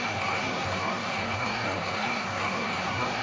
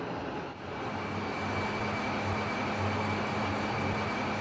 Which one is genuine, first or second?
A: second